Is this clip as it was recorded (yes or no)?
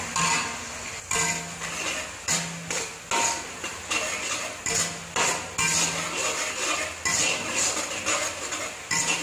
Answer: yes